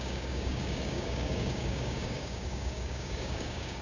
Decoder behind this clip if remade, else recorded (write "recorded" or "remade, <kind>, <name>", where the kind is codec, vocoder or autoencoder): remade, codec, DAC